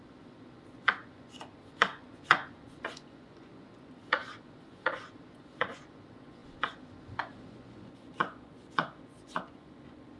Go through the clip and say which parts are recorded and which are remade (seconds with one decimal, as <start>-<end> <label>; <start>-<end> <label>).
0.0-10.2 remade